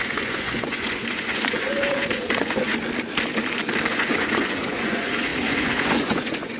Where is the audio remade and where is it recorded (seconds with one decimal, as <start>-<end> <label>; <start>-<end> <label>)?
0.0-2.7 remade; 2.7-3.9 recorded; 3.9-6.6 remade